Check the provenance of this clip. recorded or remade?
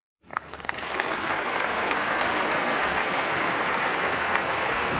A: remade